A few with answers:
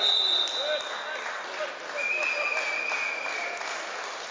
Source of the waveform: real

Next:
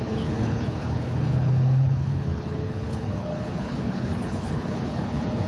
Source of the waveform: fake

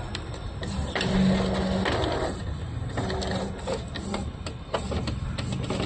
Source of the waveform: real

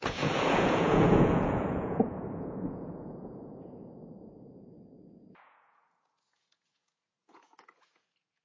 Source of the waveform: fake